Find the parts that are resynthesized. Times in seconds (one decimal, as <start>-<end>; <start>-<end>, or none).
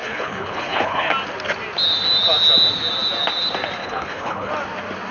0.0-1.1; 3.8-4.5